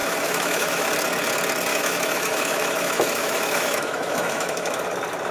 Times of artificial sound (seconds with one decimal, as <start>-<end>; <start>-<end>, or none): 0.0-0.9; 1.7-4.8